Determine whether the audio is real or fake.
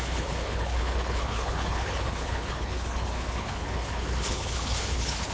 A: fake